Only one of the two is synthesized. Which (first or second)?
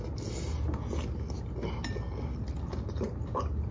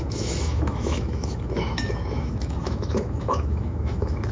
second